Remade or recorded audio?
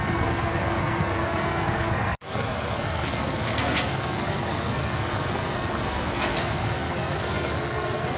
remade